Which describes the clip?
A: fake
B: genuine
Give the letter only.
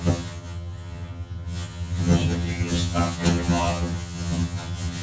A